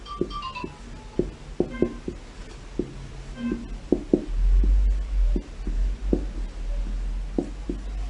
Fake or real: real